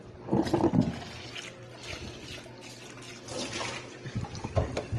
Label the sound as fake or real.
real